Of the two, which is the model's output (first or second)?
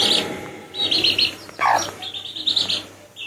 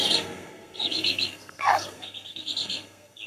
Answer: second